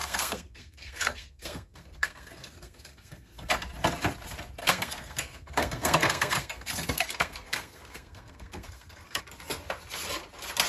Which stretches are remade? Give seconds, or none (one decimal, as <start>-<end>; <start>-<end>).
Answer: 0.0-3.5; 4.6-9.2